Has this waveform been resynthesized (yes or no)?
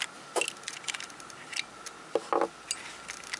no